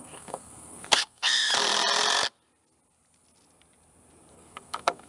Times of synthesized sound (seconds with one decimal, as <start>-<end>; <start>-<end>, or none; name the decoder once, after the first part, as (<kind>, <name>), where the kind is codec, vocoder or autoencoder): 0.0-1.5 (codec, SNAC); 4.3-5.1